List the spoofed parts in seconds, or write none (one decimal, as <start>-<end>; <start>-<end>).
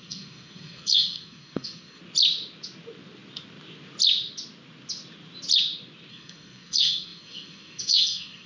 0.0-2.0; 6.1-8.5